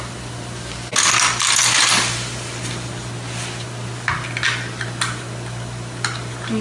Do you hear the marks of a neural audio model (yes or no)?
no